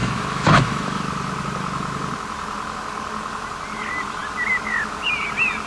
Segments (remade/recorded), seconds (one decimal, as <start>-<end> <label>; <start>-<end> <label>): 0.0-1.0 remade; 1.0-5.7 recorded